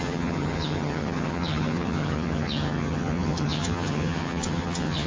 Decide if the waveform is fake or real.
fake